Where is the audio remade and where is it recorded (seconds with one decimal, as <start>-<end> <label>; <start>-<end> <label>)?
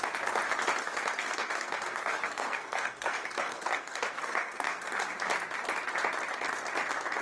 0.0-0.8 recorded; 0.8-5.1 remade; 5.1-7.2 recorded